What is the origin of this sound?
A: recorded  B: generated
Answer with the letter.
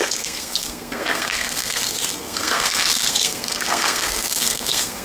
B